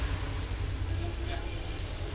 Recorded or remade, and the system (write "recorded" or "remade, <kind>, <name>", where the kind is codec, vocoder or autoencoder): recorded